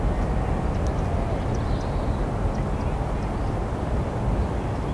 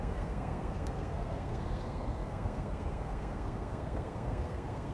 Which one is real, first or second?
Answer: first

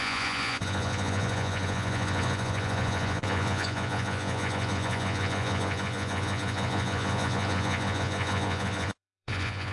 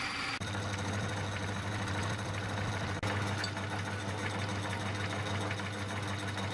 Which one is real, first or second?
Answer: second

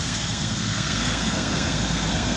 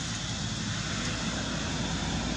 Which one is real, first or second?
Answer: second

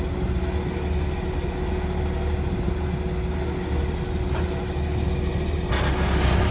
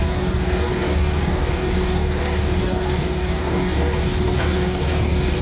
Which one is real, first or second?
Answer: first